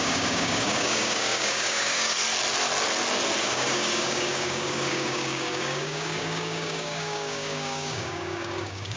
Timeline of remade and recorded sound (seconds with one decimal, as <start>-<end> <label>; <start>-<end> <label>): 0.0-2.2 remade; 2.2-3.4 recorded; 3.4-9.0 remade